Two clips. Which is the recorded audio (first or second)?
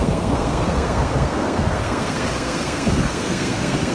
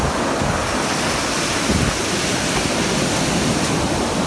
second